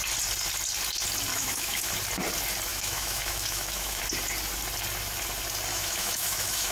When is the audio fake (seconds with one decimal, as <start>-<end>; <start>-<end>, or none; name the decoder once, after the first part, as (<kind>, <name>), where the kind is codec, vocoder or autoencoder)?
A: 1.3-1.9 (autoencoder, DAC-VAE); 2.7-4.0; 5.7-6.7